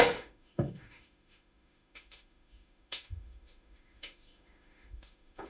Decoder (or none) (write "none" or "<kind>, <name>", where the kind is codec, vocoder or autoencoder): autoencoder, DAC-VAE